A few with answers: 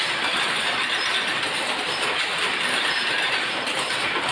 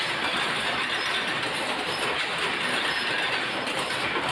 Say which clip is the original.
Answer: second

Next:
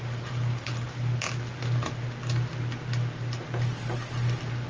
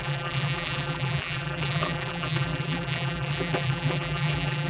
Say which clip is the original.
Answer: first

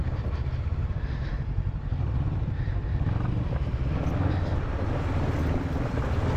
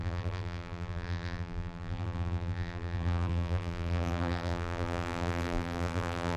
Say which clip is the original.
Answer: first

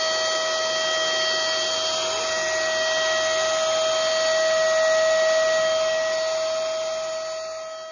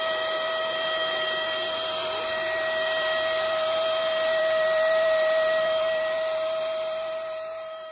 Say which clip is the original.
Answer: first